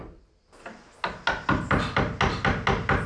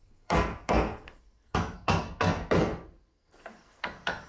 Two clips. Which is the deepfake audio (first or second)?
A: second